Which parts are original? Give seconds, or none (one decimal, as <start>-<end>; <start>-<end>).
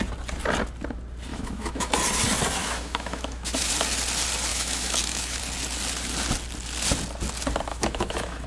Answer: 0.0-1.3; 1.9-2.6; 3.7-4.5; 5.4-7.7